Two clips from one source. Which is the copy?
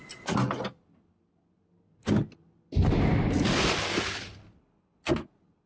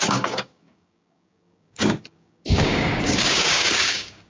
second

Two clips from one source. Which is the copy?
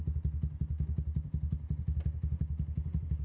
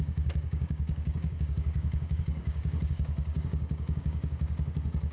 second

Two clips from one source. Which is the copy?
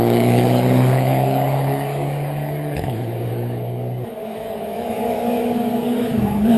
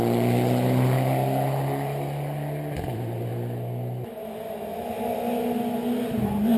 first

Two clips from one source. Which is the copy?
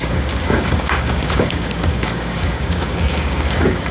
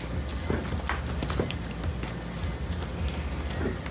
first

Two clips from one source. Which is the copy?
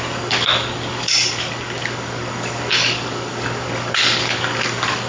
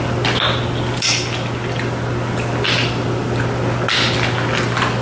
first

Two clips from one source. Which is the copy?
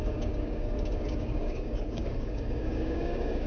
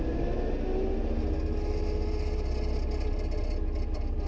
first